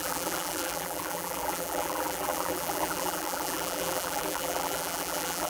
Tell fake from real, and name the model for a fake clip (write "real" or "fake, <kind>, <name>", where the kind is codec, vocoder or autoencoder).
fake, vocoder, BigVGAN v2